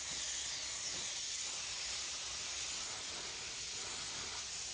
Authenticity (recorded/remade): recorded